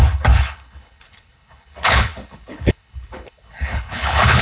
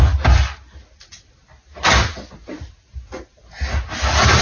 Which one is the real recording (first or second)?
second